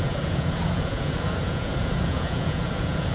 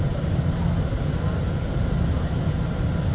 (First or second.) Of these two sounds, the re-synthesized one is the first